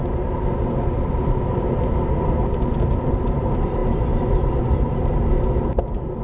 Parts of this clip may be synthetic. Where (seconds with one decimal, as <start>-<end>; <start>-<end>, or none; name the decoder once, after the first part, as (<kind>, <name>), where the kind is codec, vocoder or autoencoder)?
none